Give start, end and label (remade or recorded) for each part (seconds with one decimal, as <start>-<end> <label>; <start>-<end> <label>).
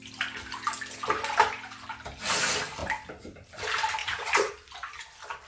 0.0-4.0 recorded; 4.0-4.5 remade; 4.5-5.5 recorded